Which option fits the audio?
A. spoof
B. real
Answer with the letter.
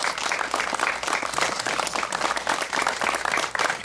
B